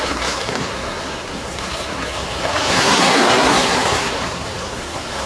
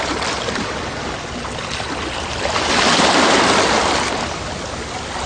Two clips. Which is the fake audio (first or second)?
first